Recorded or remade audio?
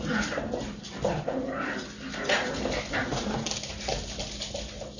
recorded